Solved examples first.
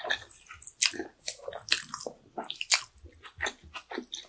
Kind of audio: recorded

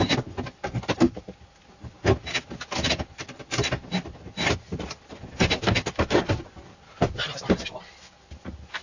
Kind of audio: recorded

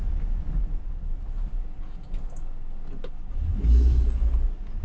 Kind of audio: recorded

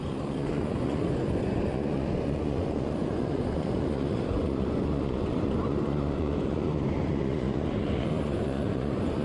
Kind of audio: remade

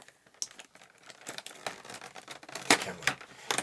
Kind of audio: recorded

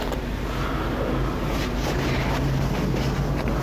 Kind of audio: remade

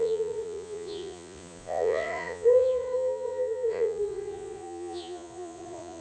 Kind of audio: remade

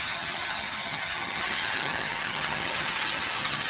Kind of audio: remade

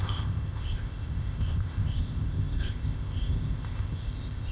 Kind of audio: remade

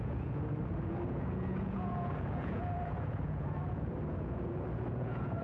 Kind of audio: remade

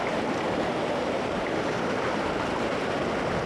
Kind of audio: recorded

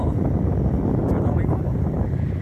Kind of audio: recorded